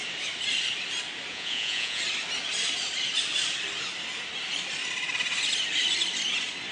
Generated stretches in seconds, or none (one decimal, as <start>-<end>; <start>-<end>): 1.3-2.0